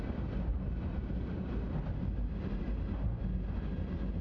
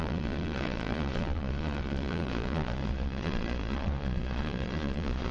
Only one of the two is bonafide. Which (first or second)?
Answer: first